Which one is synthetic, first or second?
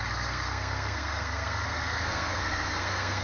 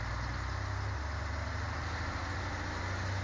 first